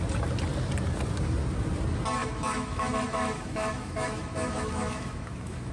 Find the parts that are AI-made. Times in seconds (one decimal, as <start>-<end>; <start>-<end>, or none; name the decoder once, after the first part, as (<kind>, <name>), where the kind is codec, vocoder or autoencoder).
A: 2.2-5.7 (autoencoder, DAC-VAE)